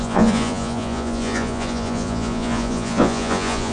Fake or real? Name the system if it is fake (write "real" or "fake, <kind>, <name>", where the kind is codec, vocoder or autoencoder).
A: fake, vocoder, Vocos